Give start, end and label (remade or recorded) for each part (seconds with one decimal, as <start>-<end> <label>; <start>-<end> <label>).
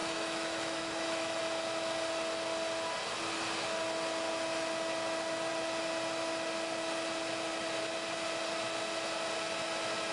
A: 0.0-1.4 remade; 1.4-10.1 recorded